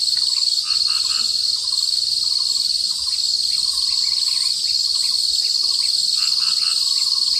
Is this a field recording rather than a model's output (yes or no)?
yes